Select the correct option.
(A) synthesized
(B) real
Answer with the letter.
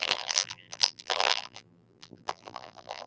A